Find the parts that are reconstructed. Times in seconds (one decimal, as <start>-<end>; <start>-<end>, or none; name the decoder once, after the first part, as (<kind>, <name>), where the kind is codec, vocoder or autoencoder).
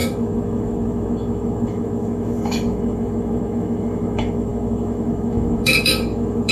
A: 0.0-6.5 (autoencoder, DAC-VAE)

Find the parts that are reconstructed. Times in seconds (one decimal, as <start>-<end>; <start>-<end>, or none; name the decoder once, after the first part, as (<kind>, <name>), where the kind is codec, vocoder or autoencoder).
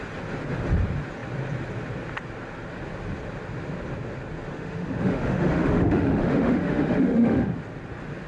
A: 4.5-7.5 (autoencoder, DAC-VAE)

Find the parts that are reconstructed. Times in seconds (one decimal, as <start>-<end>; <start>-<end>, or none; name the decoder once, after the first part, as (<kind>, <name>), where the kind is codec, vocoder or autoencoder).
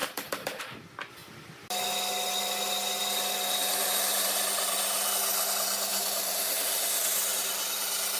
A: 3.8-4.6 (vocoder, BigVGAN v2); 5.9-7.5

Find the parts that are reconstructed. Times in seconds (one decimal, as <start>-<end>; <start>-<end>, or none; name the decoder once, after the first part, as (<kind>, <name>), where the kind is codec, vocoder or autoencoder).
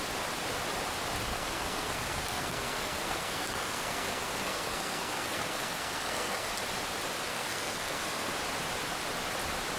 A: 1.3-6.5 (codec, SNAC); 7.3-8.3